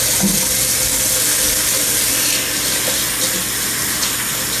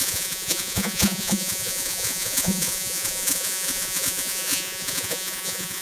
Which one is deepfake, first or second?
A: second